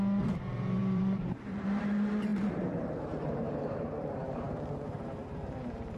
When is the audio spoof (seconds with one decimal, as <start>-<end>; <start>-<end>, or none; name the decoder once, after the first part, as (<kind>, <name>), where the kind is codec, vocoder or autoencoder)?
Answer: 0.8-1.8 (vocoder, BigVGAN v2); 2.3-6.0